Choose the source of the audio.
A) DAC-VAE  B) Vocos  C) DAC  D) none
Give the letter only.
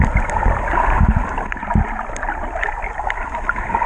D